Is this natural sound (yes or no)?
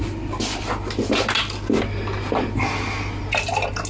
yes